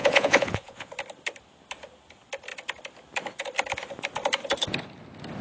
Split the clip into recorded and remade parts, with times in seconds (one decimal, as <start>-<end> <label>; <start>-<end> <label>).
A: 0.0-0.9 remade; 0.9-5.4 recorded